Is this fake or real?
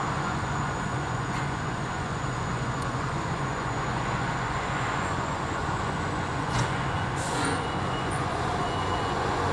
fake